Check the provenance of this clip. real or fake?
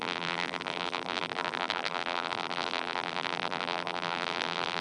fake